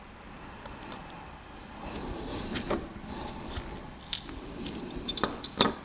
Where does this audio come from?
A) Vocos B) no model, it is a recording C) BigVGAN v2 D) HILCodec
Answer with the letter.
C